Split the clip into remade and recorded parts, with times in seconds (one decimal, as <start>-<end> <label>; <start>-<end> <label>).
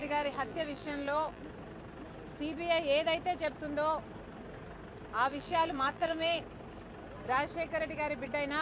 0.0-1.4 remade; 1.4-5.3 recorded; 5.3-6.4 remade; 6.4-8.6 recorded